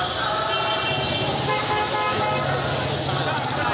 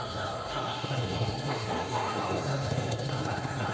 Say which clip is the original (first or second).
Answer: first